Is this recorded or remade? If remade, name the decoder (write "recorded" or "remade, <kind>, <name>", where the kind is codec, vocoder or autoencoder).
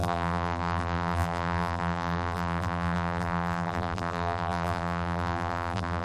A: remade, vocoder, BigVGAN v2